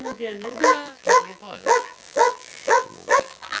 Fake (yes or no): yes